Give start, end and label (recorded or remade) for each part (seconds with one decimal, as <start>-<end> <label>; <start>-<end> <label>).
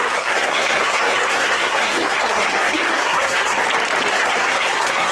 0.0-3.6 remade; 3.6-4.1 recorded; 4.1-5.1 remade